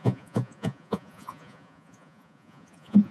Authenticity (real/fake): fake